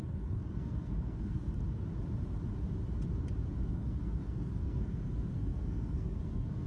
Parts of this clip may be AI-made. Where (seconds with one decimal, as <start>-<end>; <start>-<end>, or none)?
0.0-1.4; 3.7-6.7